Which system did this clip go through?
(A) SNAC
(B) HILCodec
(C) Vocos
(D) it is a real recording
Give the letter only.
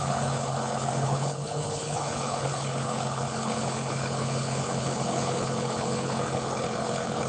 B